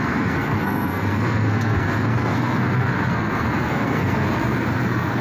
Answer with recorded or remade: remade